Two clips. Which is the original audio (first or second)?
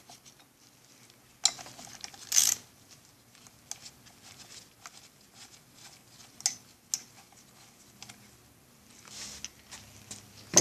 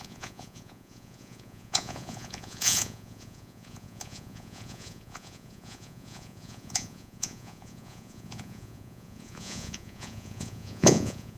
first